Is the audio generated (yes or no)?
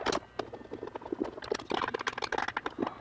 no